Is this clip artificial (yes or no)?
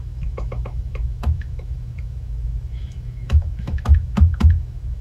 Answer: yes